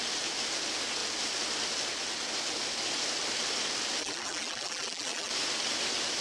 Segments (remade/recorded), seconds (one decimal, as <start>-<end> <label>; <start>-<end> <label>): 0.0-4.0 recorded; 4.0-5.3 remade; 5.3-6.2 recorded